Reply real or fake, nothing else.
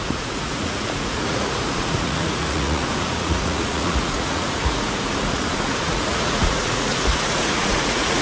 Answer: fake